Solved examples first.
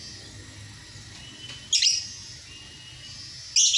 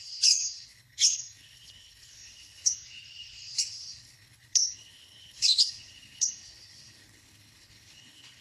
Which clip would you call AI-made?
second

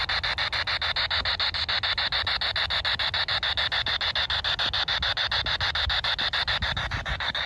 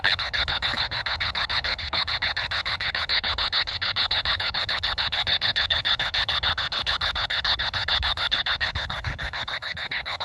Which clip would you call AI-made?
second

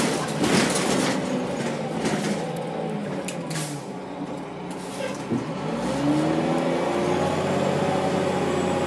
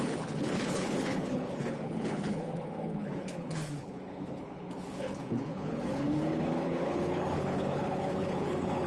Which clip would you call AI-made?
second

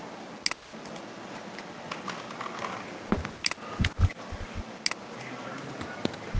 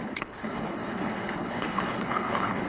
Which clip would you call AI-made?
second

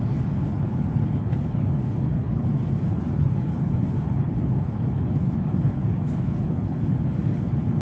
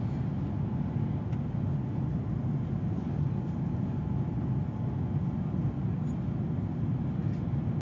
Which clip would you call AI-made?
first